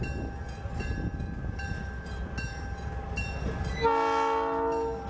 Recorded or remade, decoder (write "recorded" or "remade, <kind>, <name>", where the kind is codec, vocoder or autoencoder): recorded